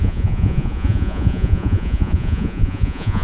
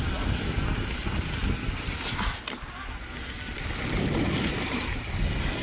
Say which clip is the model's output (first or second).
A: first